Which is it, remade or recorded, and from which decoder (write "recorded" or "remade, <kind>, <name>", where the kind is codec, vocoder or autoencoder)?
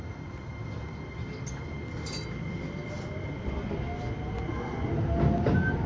recorded